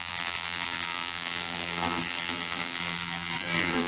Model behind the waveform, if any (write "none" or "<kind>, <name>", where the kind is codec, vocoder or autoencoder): vocoder, BigVGAN v2